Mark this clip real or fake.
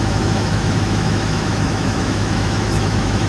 fake